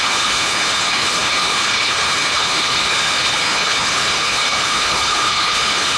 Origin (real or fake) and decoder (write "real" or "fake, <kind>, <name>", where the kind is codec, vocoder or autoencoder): fake, codec, HILCodec